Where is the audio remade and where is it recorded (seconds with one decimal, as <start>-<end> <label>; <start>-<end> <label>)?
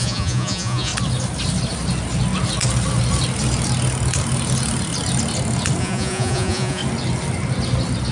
0.0-0.9 remade; 0.9-5.8 recorded; 5.8-6.8 remade; 6.8-8.1 recorded